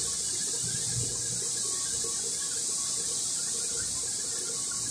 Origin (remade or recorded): recorded